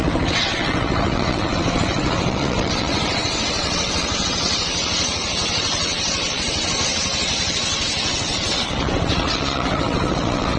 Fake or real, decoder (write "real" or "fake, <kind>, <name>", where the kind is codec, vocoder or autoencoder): fake, vocoder, WaveNeXt